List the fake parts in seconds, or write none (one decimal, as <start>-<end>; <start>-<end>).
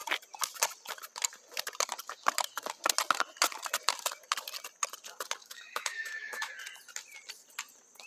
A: 5.4-6.5